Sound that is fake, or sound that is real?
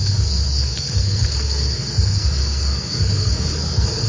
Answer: fake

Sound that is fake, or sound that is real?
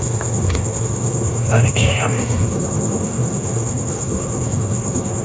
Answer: fake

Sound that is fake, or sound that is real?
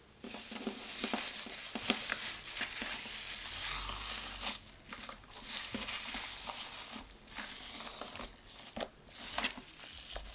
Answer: real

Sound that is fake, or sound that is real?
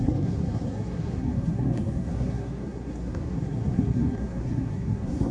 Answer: fake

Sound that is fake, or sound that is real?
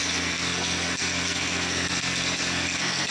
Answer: fake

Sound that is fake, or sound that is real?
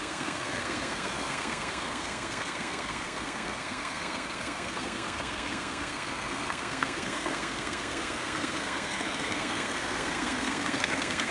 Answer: fake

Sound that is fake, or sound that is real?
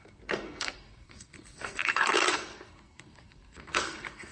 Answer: fake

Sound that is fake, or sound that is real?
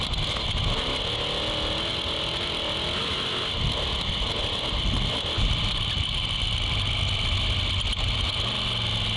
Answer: real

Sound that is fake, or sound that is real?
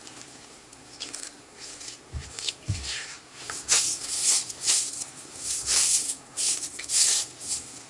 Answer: fake